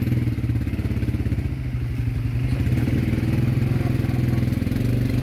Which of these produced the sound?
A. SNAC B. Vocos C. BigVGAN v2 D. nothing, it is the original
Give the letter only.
D